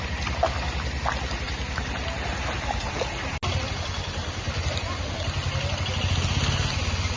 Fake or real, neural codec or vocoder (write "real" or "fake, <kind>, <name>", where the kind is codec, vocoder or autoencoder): real